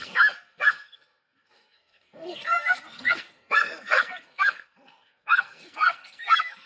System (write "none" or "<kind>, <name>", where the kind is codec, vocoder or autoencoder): codec, SNAC